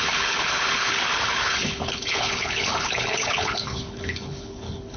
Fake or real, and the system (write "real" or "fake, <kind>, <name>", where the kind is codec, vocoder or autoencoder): fake, codec, HILCodec